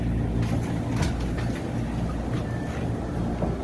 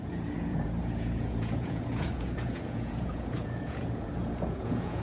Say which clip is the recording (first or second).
first